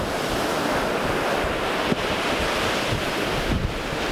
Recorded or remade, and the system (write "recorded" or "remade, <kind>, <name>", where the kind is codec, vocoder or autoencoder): recorded